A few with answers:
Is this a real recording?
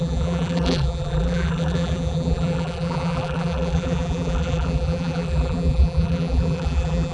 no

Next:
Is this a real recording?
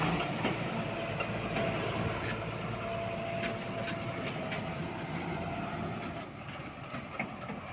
yes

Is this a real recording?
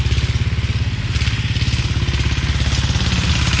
yes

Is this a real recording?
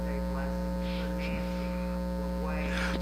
yes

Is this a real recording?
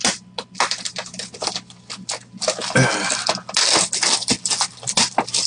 yes